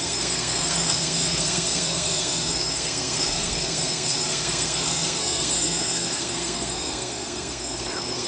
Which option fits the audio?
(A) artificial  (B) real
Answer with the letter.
A